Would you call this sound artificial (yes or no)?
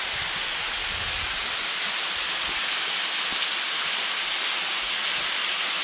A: no